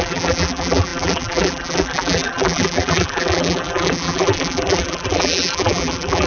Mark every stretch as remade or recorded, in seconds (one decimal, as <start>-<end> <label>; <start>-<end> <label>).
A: 0.0-6.3 remade